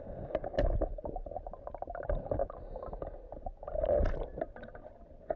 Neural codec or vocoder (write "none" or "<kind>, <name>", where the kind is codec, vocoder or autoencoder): none